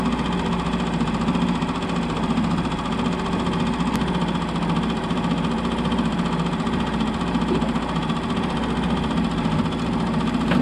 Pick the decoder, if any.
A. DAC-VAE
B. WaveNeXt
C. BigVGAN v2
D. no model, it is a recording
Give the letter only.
D